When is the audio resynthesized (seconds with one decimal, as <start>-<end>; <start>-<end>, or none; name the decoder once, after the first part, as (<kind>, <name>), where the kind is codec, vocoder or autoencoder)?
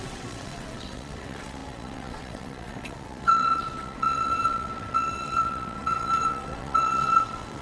0.0-7.6 (vocoder, WaveNeXt)